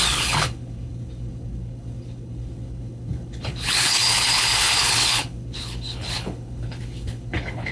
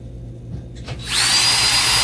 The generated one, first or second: first